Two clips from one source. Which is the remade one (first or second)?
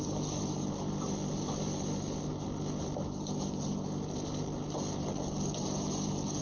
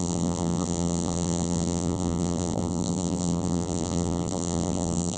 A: second